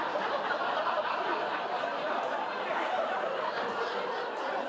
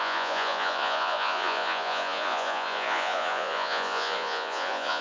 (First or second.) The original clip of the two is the first